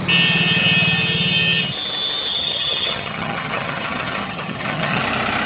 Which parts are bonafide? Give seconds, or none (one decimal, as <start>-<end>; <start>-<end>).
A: 0.0-2.3; 5.0-5.5